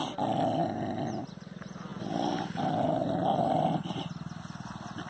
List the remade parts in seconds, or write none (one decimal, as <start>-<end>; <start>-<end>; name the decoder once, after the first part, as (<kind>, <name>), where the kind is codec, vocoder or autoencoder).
none